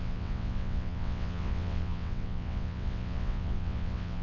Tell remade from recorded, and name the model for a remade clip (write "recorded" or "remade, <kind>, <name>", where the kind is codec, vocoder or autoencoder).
remade, vocoder, WaveNeXt